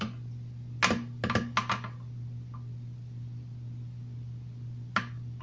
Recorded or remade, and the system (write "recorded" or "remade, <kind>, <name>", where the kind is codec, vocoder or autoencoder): recorded